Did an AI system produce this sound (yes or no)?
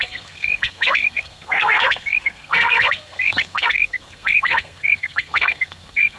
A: yes